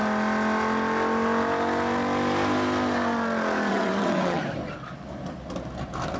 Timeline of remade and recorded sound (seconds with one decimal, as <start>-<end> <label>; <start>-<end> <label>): 0.0-3.7 recorded; 3.7-4.4 remade; 4.4-6.2 recorded